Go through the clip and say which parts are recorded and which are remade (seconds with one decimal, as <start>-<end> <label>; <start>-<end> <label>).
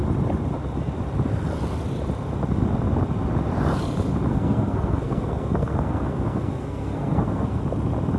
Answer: 0.0-4.3 recorded; 4.3-7.6 remade; 7.6-8.2 recorded